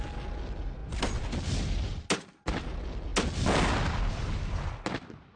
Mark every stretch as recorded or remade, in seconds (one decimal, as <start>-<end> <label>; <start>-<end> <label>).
0.0-5.4 recorded